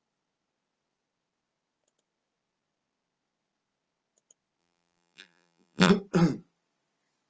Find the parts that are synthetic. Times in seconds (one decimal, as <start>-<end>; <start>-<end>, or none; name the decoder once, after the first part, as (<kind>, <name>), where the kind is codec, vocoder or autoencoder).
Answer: 4.6-5.9 (vocoder, BigVGAN v2)